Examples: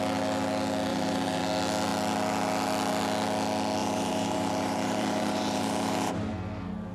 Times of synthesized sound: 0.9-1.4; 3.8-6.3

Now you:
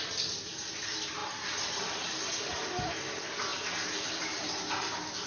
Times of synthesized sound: 3.5-4.5

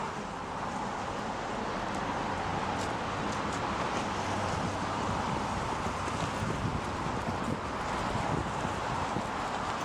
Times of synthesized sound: 8.4-9.1

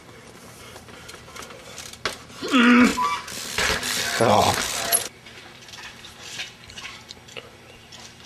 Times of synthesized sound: 2.9-7.8